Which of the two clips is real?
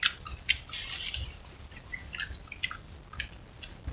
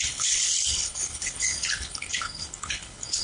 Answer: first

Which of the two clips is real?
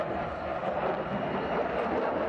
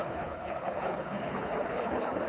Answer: first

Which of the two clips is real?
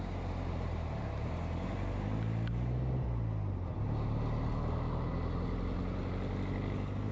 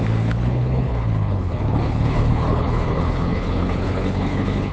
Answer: first